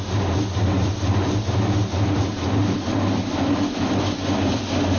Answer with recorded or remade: recorded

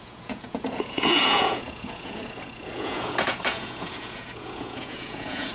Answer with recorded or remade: remade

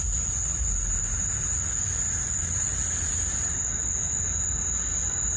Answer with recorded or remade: recorded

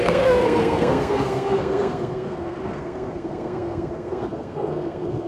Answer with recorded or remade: remade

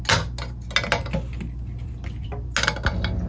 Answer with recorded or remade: recorded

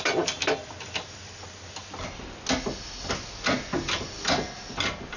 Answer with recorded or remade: recorded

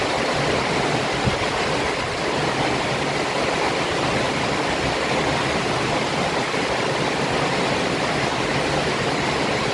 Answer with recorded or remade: recorded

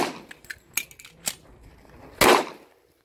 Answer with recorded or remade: recorded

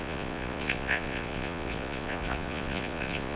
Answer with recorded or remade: remade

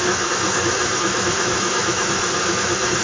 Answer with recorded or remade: remade